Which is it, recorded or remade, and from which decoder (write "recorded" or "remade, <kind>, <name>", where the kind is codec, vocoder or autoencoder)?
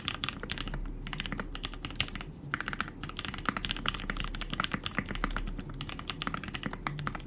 recorded